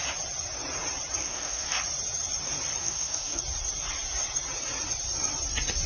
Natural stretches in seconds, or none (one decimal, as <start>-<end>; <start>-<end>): 0.0-1.2; 1.8-2.8; 3.4-5.9